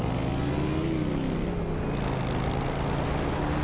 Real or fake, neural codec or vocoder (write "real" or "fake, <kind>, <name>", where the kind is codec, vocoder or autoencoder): real